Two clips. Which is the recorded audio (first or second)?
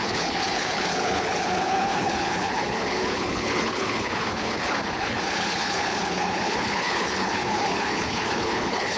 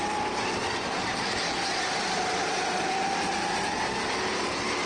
second